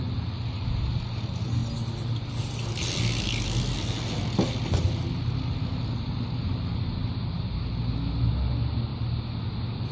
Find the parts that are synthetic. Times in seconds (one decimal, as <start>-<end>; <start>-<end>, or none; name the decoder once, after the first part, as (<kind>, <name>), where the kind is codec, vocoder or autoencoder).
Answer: none